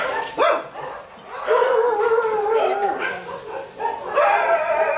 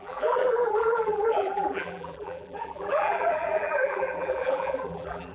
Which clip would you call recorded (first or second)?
first